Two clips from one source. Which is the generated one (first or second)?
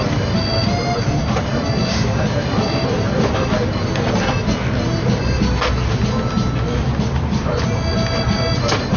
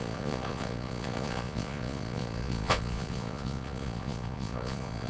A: second